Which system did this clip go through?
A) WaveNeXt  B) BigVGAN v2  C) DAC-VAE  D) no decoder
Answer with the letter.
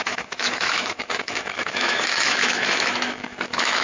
C